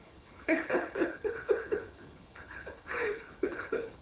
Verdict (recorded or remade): remade